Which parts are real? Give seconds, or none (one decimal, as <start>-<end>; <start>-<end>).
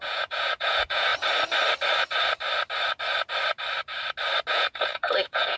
1.1-4.5